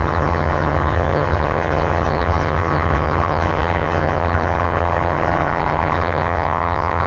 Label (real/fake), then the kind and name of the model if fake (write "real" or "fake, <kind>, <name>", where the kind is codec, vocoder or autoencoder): fake, vocoder, HiFi-GAN